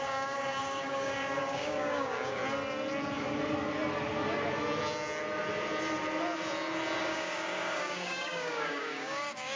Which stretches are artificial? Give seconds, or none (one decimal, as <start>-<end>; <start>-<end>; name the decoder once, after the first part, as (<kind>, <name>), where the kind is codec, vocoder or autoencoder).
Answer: 0.0-2.4 (codec, DAC); 7.0-9.6